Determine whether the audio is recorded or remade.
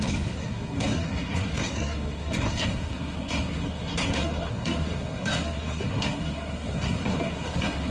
remade